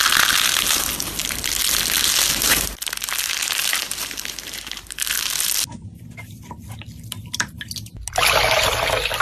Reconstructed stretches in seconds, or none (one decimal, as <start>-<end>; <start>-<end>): none